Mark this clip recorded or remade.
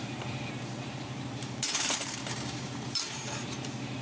remade